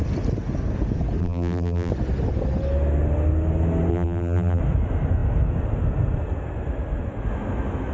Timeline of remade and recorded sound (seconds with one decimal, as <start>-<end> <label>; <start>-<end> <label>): 0.0-1.2 recorded; 1.2-1.9 remade; 1.9-3.9 recorded; 3.9-4.6 remade; 4.6-7.9 recorded